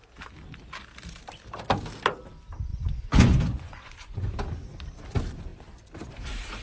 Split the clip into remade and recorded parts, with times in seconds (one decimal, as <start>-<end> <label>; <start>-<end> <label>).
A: 0.0-2.7 recorded; 2.7-4.4 remade; 4.4-6.6 recorded